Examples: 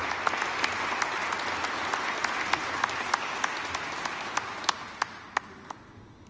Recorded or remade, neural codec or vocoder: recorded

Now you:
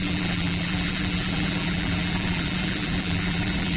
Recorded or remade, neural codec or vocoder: remade, vocoder, BigVGAN v2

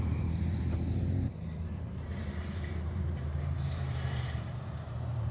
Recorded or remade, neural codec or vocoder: remade, vocoder, BigVGAN v2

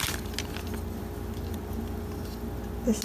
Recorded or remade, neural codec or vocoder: recorded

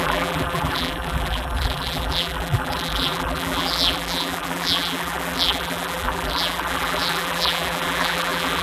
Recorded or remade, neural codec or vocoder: remade, vocoder, BigVGAN v2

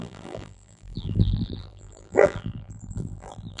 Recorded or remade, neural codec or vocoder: remade, vocoder, BigVGAN v2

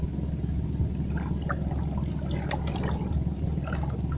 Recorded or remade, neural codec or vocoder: recorded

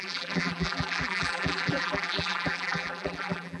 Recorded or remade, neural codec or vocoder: remade, vocoder, BigVGAN v2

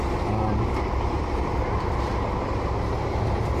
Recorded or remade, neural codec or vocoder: recorded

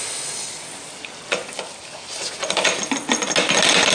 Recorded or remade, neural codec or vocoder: recorded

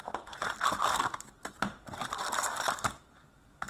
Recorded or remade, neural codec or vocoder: recorded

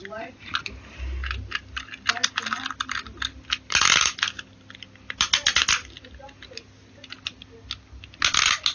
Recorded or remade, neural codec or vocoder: recorded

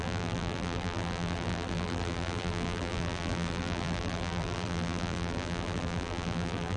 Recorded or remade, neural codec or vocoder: remade, vocoder, BigVGAN v2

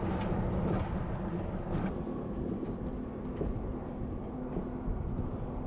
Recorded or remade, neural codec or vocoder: recorded